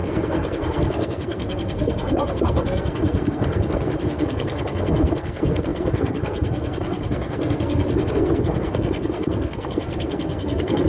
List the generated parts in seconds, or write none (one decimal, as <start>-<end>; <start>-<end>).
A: 0.0-10.9